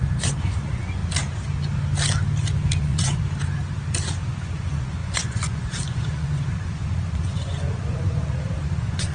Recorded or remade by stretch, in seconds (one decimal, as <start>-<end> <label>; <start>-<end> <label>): 0.0-1.0 remade; 1.0-2.8 recorded; 2.8-3.2 remade; 3.2-4.2 recorded; 4.2-9.1 remade